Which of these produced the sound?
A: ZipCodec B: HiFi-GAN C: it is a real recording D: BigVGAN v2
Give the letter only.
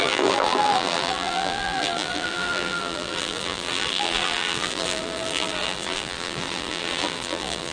D